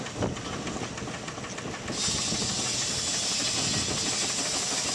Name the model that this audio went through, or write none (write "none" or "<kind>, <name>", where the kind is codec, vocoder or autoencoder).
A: none